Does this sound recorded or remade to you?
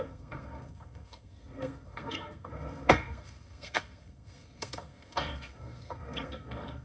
remade